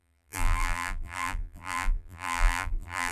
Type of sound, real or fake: fake